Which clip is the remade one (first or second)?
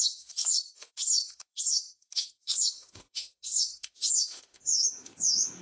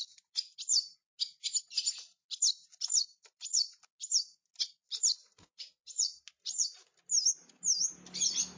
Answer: first